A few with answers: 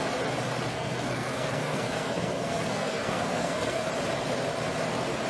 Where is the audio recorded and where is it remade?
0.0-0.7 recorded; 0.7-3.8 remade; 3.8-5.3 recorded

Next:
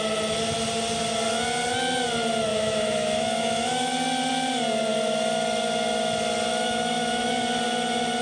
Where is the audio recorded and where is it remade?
0.0-2.5 recorded; 2.5-3.9 remade; 3.9-6.5 recorded; 6.5-7.3 remade; 7.3-8.2 recorded

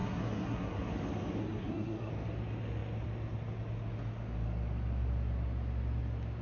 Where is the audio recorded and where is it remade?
0.0-0.9 remade; 0.9-1.4 recorded; 1.4-2.1 remade; 2.1-6.4 recorded

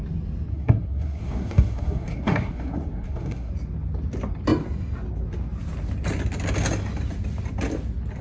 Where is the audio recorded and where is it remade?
0.0-0.5 recorded; 0.5-3.5 remade; 3.5-8.2 recorded